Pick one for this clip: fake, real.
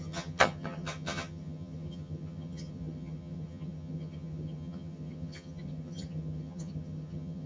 fake